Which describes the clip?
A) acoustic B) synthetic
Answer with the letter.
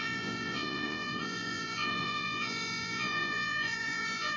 B